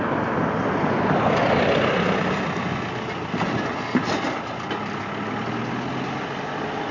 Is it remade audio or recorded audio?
recorded